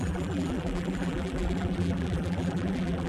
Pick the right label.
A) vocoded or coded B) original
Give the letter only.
A